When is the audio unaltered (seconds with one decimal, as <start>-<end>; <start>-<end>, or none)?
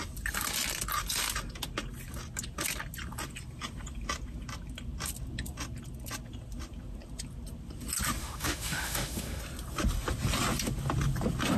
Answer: 0.0-8.2; 9.4-11.6